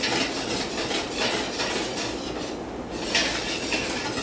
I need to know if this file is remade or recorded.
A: recorded